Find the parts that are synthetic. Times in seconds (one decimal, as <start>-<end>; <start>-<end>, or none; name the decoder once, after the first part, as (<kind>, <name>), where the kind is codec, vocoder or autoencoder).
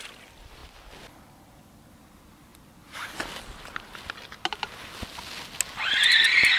none